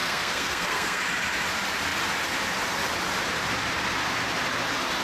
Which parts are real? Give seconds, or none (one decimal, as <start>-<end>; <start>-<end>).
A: 1.0-5.0